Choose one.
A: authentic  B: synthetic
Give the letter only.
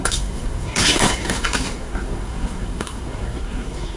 B